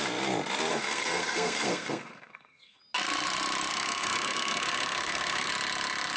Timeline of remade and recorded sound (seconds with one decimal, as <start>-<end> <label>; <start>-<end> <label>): 0.0-0.7 recorded; 0.7-2.8 remade; 2.8-3.7 recorded; 3.7-5.5 remade; 5.5-6.2 recorded